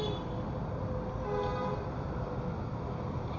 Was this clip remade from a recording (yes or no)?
no